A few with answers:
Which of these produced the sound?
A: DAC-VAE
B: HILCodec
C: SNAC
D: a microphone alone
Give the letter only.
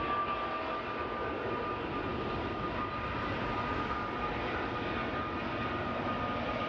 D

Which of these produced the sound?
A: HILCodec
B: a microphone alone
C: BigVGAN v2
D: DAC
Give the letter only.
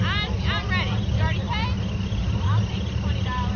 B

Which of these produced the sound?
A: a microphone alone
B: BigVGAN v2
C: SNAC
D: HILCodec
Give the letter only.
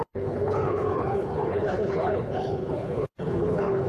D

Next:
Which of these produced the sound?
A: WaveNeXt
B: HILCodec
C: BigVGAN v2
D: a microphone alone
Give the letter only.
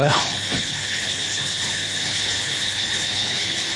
B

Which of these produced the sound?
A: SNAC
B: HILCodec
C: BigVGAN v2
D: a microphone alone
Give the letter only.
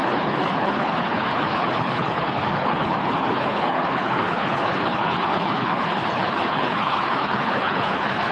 B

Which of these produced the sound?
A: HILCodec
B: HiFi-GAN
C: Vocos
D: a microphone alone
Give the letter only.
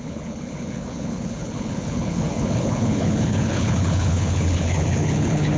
A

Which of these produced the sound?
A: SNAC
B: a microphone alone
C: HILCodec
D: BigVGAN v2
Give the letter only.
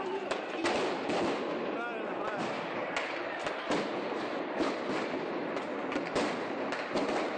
B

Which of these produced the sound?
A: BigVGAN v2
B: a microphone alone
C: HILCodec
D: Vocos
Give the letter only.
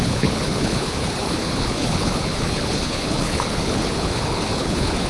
C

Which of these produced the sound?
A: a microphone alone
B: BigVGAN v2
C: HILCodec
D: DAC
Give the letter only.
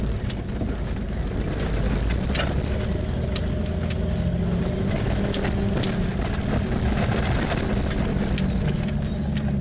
A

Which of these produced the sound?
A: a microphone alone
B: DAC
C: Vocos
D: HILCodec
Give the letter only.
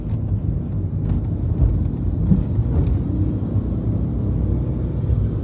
A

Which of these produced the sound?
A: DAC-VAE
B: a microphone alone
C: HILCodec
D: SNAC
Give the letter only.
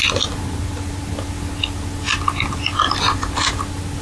B